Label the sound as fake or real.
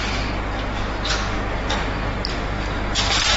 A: real